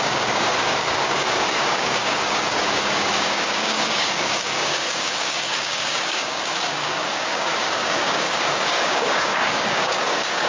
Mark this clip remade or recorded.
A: remade